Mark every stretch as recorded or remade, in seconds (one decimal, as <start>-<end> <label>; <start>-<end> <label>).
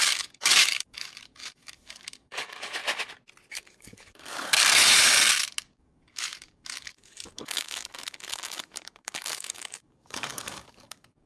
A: 0.0-2.8 remade; 2.8-3.5 recorded; 3.5-4.8 remade; 4.8-5.6 recorded; 5.6-11.3 remade